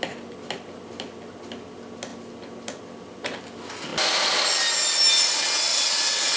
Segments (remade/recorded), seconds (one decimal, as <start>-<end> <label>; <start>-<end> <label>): 0.0-5.7 recorded; 5.7-6.4 remade